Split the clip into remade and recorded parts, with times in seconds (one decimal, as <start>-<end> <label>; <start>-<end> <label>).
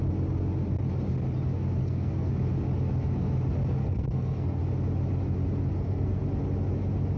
0.0-1.8 recorded; 1.8-2.3 remade; 2.3-3.8 recorded; 3.8-4.6 remade; 4.6-5.7 recorded; 5.7-6.2 remade; 6.2-7.2 recorded